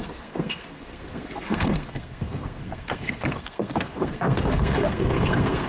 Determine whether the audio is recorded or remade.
remade